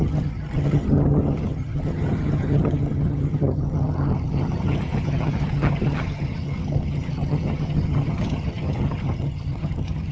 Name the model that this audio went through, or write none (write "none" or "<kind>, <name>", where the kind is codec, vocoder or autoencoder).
vocoder, HiFi-GAN